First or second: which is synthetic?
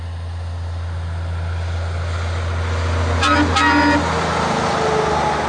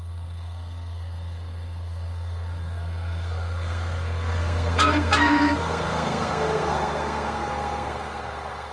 second